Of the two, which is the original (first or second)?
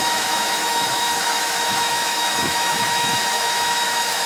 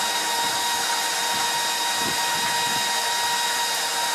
second